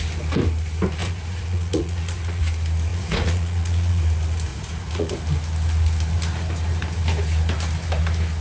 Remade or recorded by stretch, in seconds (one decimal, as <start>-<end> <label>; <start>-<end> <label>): 0.0-1.0 recorded; 1.0-2.4 remade; 2.4-2.9 recorded; 2.9-4.0 remade; 4.0-4.5 recorded; 4.5-5.1 remade; 5.1-8.4 recorded

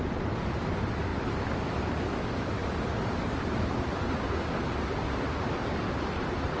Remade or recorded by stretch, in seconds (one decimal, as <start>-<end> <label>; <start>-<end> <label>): 0.0-6.6 recorded

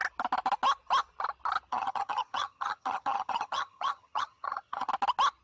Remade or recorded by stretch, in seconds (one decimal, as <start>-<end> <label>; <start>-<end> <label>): 0.0-1.7 recorded; 1.7-4.9 remade; 4.9-5.4 recorded

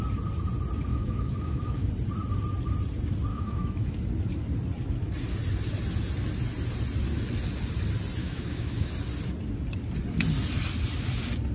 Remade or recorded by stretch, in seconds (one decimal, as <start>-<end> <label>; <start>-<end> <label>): 0.0-0.9 recorded; 0.9-1.9 remade; 1.9-3.3 recorded; 3.3-3.9 remade; 3.9-8.2 recorded; 8.2-8.9 remade; 8.9-11.5 recorded

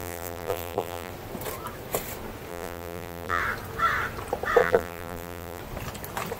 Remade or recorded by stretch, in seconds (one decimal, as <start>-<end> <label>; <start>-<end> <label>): 0.0-1.1 remade; 1.1-2.5 recorded; 2.5-3.4 remade; 3.4-4.6 recorded; 4.6-5.6 remade; 5.6-6.4 recorded

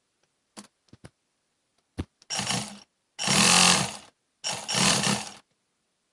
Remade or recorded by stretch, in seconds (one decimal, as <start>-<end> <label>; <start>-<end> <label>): 0.0-6.1 recorded